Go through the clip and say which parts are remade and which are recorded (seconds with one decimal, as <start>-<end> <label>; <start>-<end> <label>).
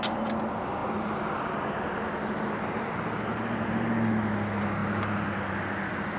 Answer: 0.0-6.2 recorded